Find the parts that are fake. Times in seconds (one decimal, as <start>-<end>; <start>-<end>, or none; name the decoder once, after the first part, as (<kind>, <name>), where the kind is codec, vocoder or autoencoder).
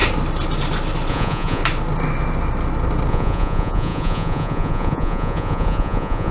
1.1-1.6 (vocoder, Vocos); 3.1-6.3